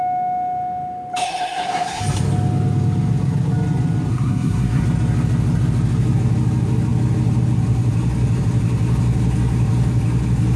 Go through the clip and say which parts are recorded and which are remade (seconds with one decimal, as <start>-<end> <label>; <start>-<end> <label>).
0.0-1.2 recorded; 1.2-2.0 remade; 2.0-4.1 recorded; 4.1-4.8 remade; 4.8-10.6 recorded